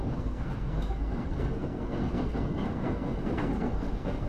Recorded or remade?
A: remade